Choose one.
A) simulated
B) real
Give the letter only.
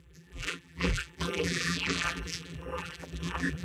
A